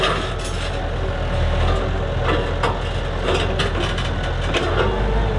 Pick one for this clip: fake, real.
real